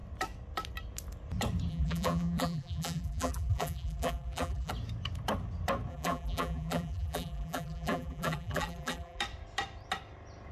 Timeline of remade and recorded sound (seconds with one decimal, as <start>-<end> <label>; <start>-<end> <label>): 0.0-1.7 recorded; 1.7-4.7 remade; 4.7-5.9 recorded; 5.9-9.2 remade; 9.2-10.5 recorded